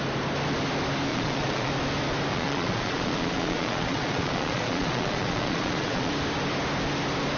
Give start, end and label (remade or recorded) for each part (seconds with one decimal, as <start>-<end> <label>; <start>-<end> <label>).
0.0-1.1 recorded; 1.1-1.7 remade; 1.7-2.3 recorded; 2.3-6.1 remade; 6.1-7.4 recorded